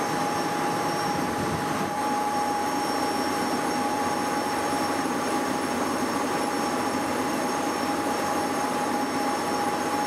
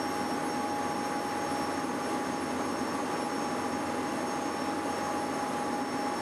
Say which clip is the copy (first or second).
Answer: first